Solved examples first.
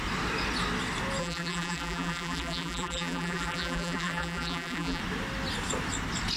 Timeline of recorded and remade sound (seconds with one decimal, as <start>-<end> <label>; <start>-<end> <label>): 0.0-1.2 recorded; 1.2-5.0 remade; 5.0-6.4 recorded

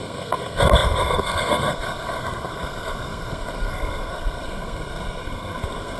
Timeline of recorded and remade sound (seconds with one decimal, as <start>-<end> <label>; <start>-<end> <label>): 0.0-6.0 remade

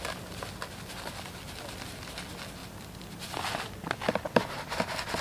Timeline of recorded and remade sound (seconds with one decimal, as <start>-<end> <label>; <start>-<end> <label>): 0.0-5.2 recorded

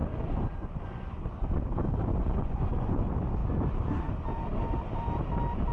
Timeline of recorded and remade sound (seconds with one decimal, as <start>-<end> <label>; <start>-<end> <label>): 0.0-1.6 remade; 1.6-2.1 recorded; 2.1-3.0 remade; 3.0-5.7 recorded

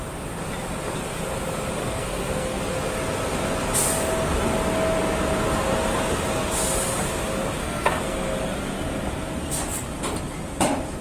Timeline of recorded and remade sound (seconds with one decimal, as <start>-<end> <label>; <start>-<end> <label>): 0.0-1.8 recorded; 1.8-2.6 remade; 2.6-7.6 recorded; 7.6-8.4 remade; 8.4-11.0 recorded

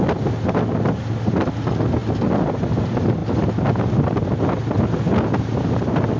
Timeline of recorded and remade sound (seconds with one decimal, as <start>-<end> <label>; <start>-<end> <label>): 0.0-6.2 recorded

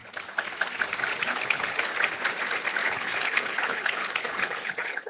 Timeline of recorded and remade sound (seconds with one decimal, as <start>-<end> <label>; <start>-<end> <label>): 0.0-1.1 recorded; 1.1-1.9 remade; 1.9-2.8 recorded; 2.8-5.1 remade